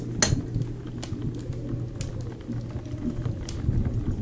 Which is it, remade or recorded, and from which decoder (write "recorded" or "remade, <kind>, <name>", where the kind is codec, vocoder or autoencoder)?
recorded